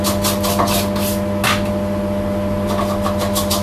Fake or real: real